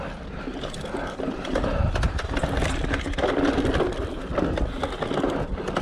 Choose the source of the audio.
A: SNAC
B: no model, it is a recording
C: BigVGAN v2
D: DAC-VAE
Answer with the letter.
B